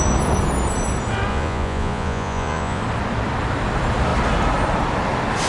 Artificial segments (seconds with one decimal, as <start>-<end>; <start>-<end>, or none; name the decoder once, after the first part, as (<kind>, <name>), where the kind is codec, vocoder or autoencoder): 1.3-2.8 (vocoder, Vocos)